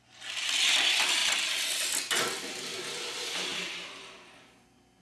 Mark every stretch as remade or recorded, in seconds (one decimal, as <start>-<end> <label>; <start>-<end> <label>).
0.0-5.0 recorded

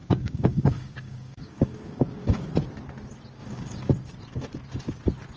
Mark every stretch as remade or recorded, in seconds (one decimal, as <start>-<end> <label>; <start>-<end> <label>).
0.0-2.4 remade; 2.4-3.4 recorded; 3.4-3.9 remade; 3.9-5.4 recorded